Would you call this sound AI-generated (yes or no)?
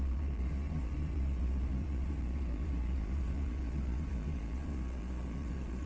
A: yes